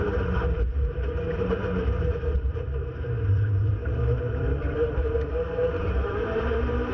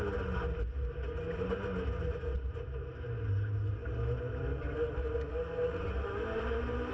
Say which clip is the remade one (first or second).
first